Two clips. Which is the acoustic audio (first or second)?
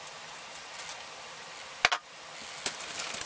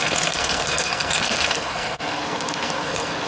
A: first